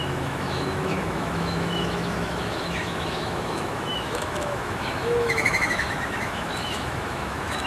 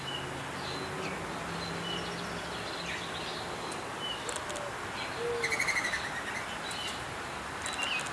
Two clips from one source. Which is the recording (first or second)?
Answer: second